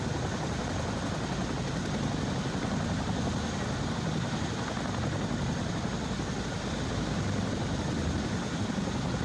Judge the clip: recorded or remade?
recorded